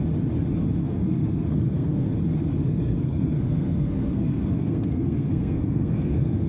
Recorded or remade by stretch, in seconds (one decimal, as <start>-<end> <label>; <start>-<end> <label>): 0.0-0.8 recorded; 0.8-2.1 remade; 2.1-2.5 recorded; 2.5-6.5 remade